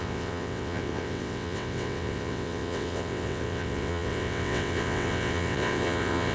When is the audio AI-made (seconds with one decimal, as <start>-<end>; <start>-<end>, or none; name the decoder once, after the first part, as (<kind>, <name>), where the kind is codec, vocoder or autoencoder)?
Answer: 0.0-6.3 (vocoder, WaveNeXt)